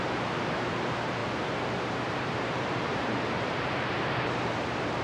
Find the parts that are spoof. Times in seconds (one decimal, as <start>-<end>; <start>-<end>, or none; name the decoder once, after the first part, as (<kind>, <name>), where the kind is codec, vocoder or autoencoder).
0.0-5.0 (vocoder, BigVGAN v2)